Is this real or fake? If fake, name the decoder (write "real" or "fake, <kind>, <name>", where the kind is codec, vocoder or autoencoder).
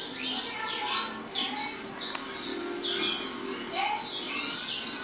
real